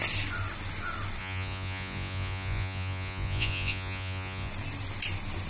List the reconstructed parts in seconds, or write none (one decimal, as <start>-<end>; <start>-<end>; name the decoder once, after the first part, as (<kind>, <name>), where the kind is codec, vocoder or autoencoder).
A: 1.2-4.5 (vocoder, Vocos)